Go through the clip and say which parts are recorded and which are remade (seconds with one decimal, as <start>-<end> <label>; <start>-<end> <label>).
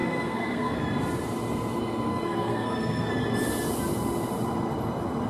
0.0-0.8 remade; 0.8-2.1 recorded; 2.1-3.1 remade; 3.1-5.3 recorded